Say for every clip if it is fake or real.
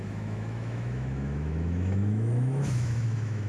fake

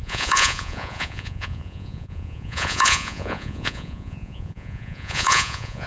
fake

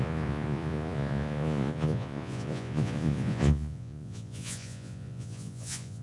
fake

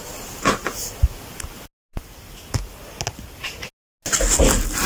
real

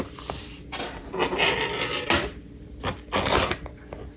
real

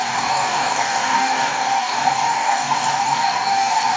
fake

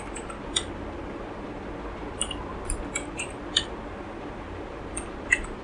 real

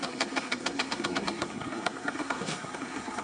fake